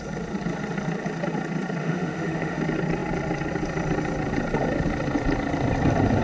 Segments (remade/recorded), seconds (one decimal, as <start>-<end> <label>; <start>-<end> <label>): 0.0-1.8 recorded; 1.8-2.6 remade; 2.6-6.2 recorded